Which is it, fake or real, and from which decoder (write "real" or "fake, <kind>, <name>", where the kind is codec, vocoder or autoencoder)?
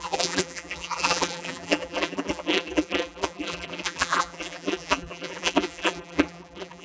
fake, vocoder, BigVGAN v2